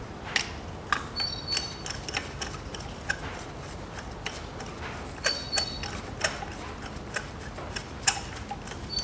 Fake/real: real